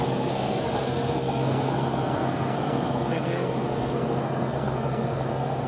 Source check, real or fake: fake